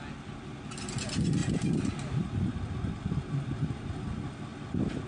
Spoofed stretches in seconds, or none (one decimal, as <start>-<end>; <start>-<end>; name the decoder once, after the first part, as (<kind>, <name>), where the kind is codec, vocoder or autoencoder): none